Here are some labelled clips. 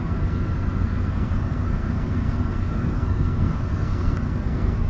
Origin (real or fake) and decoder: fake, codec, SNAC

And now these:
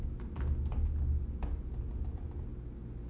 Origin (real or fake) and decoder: real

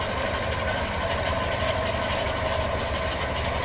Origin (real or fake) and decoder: real